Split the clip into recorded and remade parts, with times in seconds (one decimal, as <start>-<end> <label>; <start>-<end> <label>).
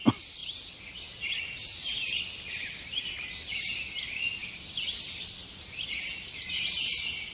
0.0-0.4 remade; 0.4-2.5 recorded; 2.5-7.3 remade